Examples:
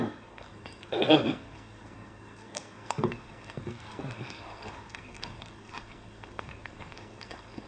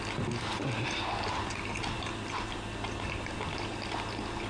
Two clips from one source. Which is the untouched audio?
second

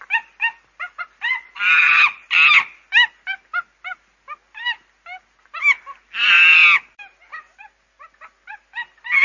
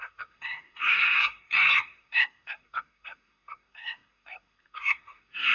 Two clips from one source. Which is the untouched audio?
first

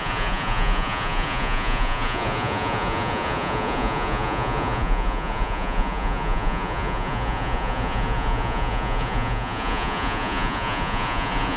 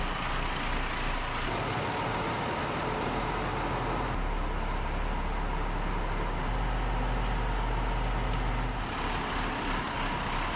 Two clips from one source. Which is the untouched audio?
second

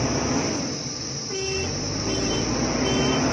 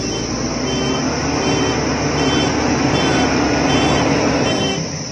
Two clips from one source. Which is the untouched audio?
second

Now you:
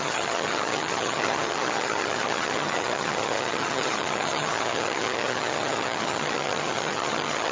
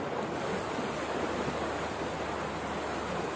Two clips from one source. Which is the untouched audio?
second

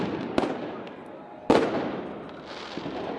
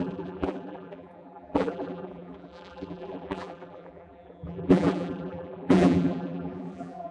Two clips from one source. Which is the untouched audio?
first